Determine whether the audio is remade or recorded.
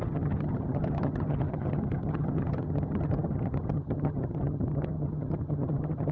remade